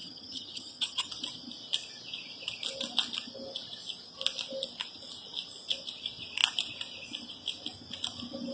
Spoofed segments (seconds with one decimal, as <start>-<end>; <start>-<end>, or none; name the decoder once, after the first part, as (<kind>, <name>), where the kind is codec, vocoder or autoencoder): 0.0-1.1 (vocoder, HiFi-GAN)